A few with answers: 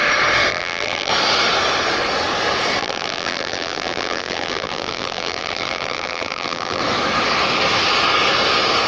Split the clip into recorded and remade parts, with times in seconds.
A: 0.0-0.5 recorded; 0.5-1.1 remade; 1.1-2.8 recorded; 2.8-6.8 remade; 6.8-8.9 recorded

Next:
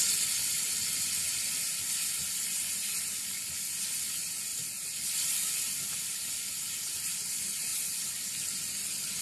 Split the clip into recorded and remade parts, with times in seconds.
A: 0.0-9.2 recorded

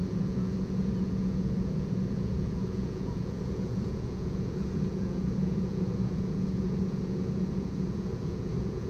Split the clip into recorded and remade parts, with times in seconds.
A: 0.0-8.9 remade

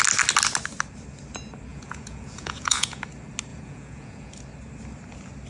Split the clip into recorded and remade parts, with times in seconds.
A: 0.0-1.7 recorded; 1.7-3.0 remade; 3.0-3.5 recorded; 3.5-4.3 remade; 4.3-5.5 recorded